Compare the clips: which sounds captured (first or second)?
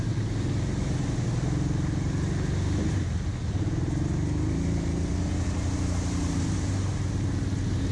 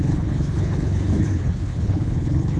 first